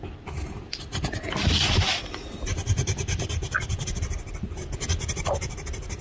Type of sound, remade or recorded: recorded